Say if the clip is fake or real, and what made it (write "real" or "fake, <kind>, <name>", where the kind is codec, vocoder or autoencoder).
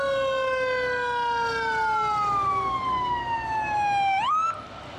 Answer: real